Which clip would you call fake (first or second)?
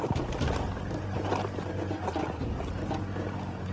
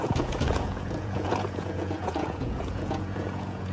second